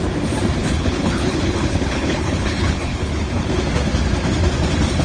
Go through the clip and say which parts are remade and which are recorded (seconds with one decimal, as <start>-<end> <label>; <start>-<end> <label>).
0.0-0.6 recorded; 0.6-3.6 remade; 3.6-5.0 recorded